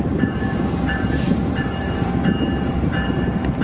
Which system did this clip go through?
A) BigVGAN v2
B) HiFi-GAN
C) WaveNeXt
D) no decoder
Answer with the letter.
A